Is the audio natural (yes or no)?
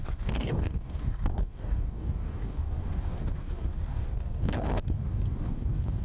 no